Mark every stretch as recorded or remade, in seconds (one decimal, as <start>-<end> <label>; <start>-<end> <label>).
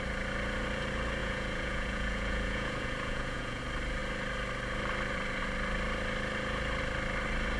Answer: 0.0-1.2 recorded; 1.2-3.6 remade; 3.6-7.6 recorded